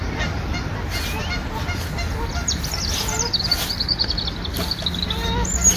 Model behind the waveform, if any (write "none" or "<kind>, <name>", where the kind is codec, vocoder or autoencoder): none